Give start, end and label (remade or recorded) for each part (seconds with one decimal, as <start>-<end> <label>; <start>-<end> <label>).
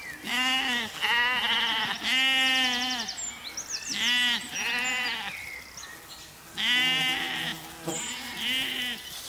0.0-9.3 recorded